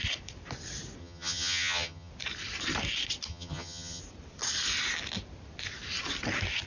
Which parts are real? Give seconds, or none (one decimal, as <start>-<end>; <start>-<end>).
0.0-1.0; 2.1-3.3; 4.0-6.7